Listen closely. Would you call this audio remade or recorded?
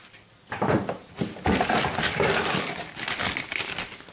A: recorded